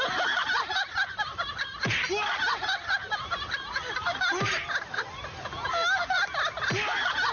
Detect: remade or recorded recorded